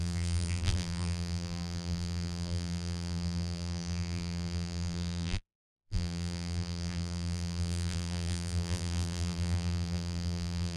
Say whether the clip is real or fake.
fake